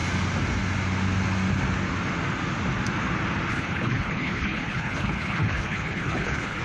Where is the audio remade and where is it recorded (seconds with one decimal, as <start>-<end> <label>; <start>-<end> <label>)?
0.0-3.5 recorded; 3.5-6.6 remade